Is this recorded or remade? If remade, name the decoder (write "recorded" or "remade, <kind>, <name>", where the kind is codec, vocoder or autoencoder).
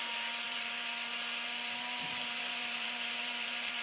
remade, vocoder, BigVGAN v2